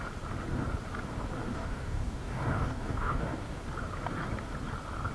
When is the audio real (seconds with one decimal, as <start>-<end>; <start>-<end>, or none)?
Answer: 0.0-1.5; 3.6-5.1

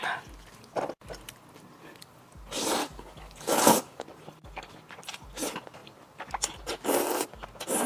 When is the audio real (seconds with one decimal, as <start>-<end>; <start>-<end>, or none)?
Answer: 0.0-2.8; 4.0-7.9

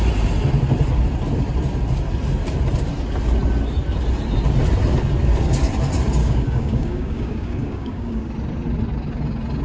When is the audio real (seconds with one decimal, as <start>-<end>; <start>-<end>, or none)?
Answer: 0.0-6.2; 8.3-9.6

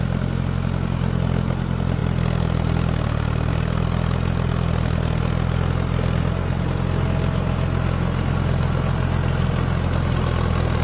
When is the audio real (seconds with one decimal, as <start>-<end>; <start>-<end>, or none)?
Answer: 0.0-10.8

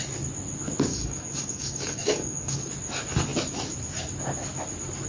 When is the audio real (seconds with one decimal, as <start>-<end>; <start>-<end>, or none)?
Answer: 0.0-0.9; 2.7-5.1